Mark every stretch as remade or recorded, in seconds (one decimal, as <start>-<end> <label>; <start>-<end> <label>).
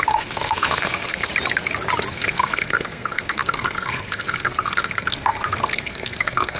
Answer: 0.0-1.3 remade; 1.3-2.1 recorded; 2.1-6.6 remade